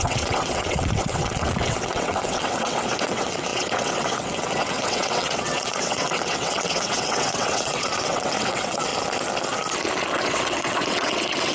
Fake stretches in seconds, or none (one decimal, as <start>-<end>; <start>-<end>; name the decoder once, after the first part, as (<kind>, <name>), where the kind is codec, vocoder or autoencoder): 0.0-8.9 (vocoder, WaveNeXt); 10.1-11.5